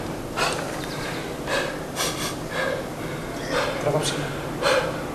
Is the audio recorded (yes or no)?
yes